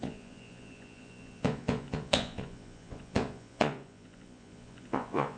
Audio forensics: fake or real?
fake